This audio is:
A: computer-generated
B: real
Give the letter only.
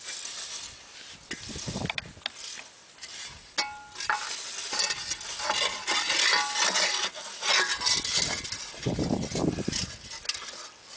B